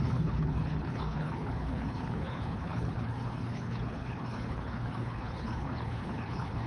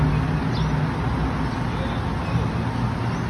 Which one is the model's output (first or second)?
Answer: first